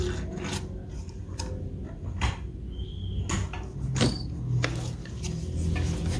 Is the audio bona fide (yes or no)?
yes